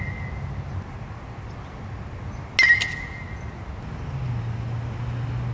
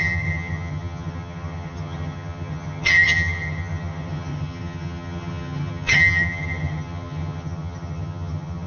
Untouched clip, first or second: first